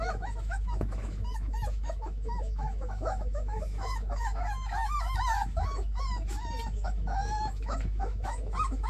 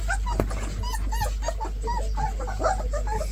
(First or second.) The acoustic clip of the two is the second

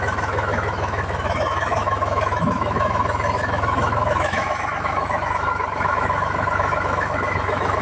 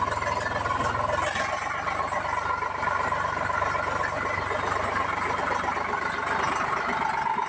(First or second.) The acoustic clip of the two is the second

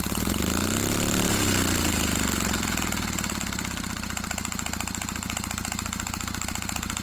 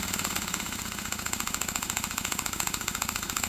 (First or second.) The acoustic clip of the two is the first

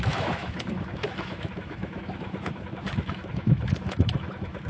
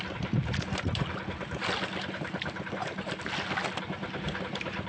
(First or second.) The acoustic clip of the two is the second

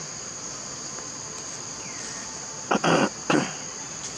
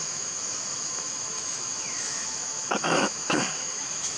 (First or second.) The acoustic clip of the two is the first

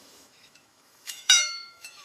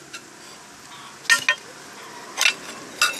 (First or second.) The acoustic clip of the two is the second